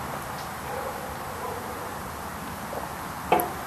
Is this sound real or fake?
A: fake